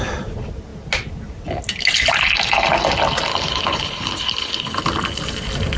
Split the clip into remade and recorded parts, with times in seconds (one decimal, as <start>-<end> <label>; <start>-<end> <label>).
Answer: 0.0-3.3 recorded; 3.3-4.8 remade; 4.8-5.8 recorded

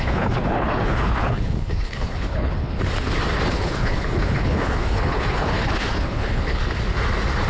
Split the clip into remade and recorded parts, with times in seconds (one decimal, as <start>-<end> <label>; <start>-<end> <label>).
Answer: 0.0-2.7 remade; 2.7-3.5 recorded; 3.5-6.6 remade; 6.6-7.5 recorded

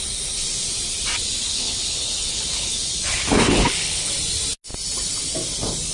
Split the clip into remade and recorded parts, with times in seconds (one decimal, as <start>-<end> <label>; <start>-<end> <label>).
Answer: 0.0-1.5 recorded; 1.5-4.1 remade; 4.1-5.9 recorded

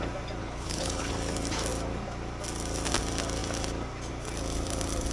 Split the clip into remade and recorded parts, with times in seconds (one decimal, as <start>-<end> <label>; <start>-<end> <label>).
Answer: 0.0-0.4 recorded; 0.4-1.1 remade; 1.1-5.1 recorded